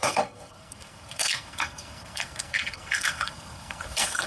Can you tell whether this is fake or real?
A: fake